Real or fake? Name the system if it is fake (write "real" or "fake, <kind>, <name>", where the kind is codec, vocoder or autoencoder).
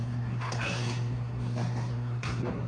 fake, codec, SNAC